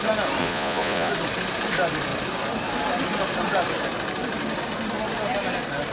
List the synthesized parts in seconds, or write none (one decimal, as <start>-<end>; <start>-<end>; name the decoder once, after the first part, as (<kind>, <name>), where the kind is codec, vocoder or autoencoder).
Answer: 0.4-1.1 (vocoder, Vocos)